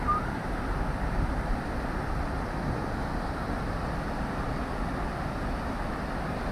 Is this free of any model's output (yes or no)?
yes